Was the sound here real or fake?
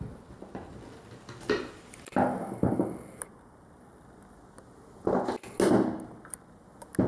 real